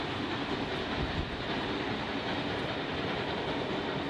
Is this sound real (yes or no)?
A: yes